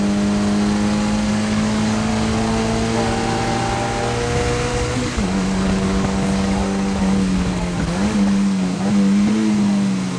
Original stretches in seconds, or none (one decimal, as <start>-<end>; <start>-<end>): 0.0-1.3; 2.1-4.7; 8.8-10.2